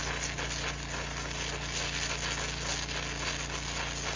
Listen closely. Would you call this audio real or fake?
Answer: real